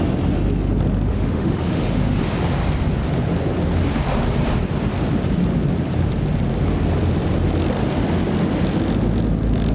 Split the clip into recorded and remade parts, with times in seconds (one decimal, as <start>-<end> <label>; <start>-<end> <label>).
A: 0.0-1.1 recorded; 1.1-2.2 remade; 2.2-9.7 recorded